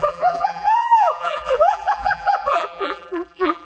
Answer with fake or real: fake